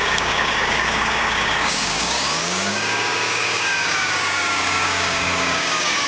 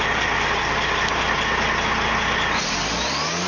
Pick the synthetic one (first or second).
first